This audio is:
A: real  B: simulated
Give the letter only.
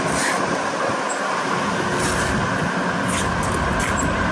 A